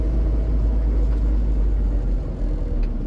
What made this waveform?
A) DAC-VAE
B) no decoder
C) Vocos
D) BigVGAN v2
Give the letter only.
B